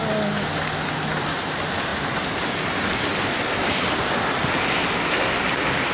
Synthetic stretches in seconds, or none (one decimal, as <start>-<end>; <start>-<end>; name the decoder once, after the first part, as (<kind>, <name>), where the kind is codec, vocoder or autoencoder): none